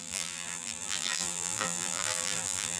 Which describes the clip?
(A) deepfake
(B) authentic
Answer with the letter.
A